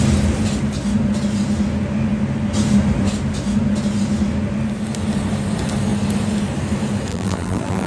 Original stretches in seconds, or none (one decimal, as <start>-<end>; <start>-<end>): 0.0-7.1